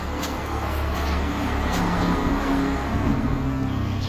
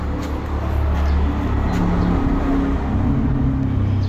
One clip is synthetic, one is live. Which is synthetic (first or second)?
first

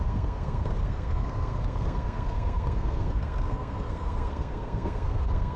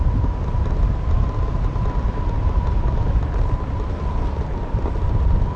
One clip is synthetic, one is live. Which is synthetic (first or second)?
first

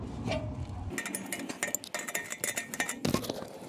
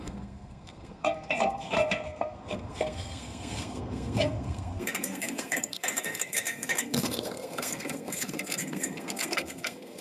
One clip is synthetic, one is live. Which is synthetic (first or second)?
second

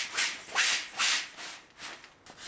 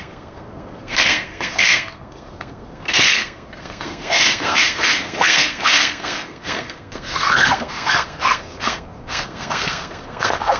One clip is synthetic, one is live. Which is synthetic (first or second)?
second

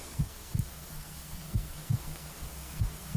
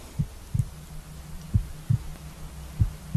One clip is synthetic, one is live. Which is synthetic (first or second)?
first